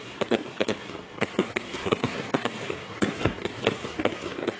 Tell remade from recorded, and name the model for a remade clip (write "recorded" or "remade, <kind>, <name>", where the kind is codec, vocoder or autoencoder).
remade, codec, SNAC